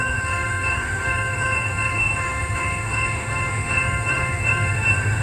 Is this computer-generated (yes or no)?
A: yes